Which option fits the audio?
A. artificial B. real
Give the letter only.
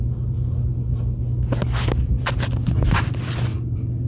B